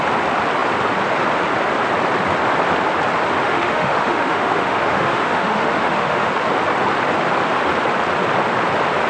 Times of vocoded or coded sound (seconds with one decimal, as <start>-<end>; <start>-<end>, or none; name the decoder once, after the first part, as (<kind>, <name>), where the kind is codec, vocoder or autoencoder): 3.4-6.3 (autoencoder, DAC-VAE)